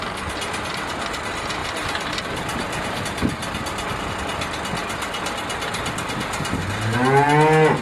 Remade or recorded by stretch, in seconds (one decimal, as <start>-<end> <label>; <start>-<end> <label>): 0.0-7.8 recorded

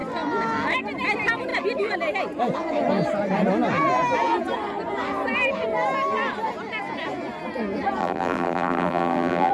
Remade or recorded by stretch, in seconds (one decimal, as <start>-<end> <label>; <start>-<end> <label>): 0.0-8.0 recorded; 8.0-9.5 remade

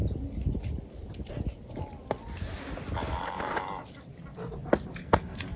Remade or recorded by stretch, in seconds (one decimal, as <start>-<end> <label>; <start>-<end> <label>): 0.0-5.0 recorded; 5.0-5.6 remade

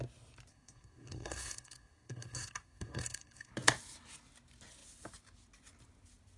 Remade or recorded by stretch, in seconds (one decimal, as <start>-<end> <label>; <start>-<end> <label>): 0.0-0.5 recorded; 0.5-3.5 remade; 3.5-6.4 recorded

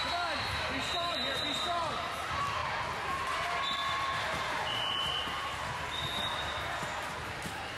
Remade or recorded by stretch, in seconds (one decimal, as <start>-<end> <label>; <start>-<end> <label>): 0.0-2.6 remade; 2.6-3.2 recorded; 3.2-7.8 remade

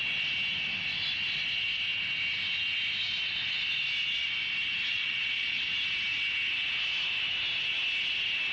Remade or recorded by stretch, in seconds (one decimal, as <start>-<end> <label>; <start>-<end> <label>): 0.0-4.9 recorded; 4.9-5.6 remade; 5.6-8.5 recorded

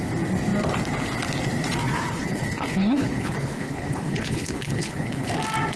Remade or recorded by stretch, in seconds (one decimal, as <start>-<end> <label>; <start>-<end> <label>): 0.0-1.8 recorded; 1.8-5.3 remade; 5.3-5.8 recorded

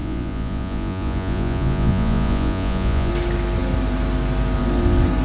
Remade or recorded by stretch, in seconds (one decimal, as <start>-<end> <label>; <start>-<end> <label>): 0.0-3.1 remade; 3.1-5.2 recorded